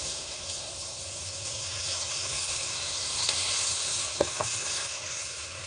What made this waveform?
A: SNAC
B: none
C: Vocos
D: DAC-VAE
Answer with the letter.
A